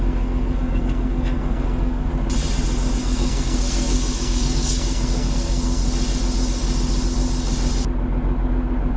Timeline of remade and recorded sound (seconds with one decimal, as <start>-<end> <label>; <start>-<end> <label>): 0.0-2.1 remade; 2.1-3.0 recorded; 3.0-5.8 remade; 5.8-9.0 recorded